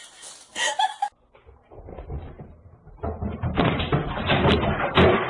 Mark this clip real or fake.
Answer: real